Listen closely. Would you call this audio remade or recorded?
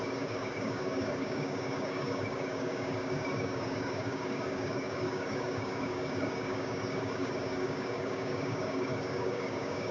remade